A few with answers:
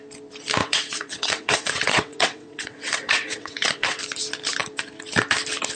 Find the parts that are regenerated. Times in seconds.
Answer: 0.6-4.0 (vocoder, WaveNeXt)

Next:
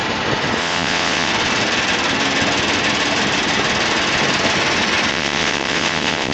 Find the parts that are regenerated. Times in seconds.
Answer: 0.6-1.3 (vocoder, WaveNeXt); 5.1-6.3